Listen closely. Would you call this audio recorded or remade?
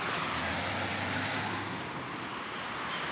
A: recorded